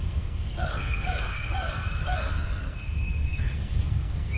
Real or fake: fake